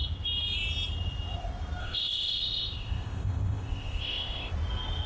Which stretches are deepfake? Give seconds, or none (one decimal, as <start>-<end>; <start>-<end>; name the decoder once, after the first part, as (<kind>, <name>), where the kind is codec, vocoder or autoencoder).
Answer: 1.8-4.5 (codec, ZipCodec)